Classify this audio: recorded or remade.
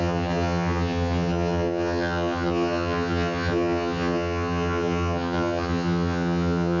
remade